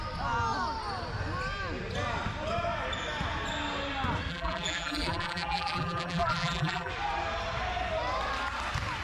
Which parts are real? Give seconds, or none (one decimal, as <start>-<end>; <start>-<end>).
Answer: 0.0-4.3; 6.9-9.0